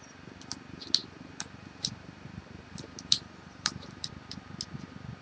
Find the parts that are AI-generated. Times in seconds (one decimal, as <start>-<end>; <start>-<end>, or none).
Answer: 1.0-4.1